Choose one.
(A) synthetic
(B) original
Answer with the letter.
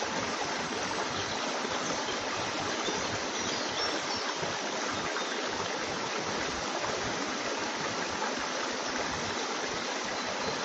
B